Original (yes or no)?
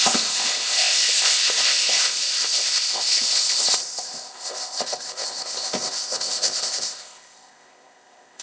no